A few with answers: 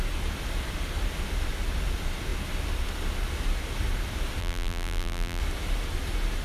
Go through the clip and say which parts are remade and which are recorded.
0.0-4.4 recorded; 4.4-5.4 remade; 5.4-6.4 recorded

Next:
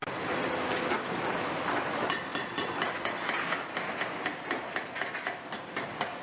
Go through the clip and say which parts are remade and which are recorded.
0.0-6.2 recorded

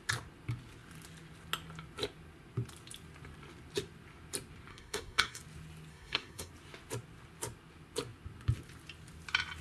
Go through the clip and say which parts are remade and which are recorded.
0.0-4.7 recorded; 4.7-5.4 remade; 5.4-5.9 recorded; 5.9-6.5 remade; 6.5-9.6 recorded

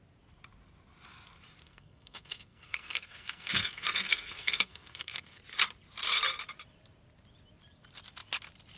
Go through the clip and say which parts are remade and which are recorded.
0.0-1.6 recorded; 1.6-5.4 remade; 5.4-8.8 recorded